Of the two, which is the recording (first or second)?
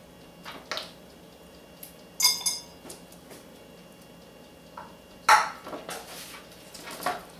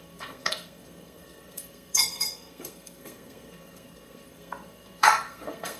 first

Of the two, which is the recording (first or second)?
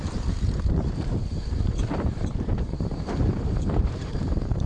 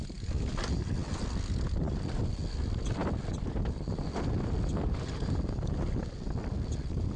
second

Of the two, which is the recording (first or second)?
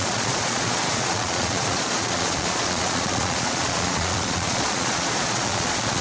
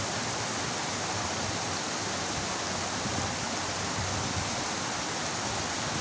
second